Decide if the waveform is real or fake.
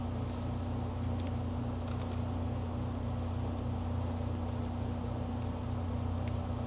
real